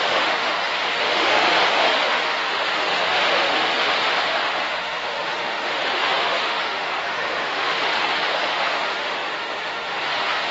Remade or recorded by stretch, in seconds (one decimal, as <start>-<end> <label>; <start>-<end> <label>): 0.0-10.5 remade